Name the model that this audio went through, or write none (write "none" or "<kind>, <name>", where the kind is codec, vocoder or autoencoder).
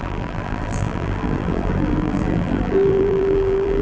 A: vocoder, BigVGAN v2